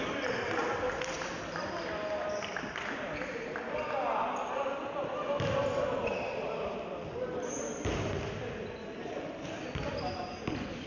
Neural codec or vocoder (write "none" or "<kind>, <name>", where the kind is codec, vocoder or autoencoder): none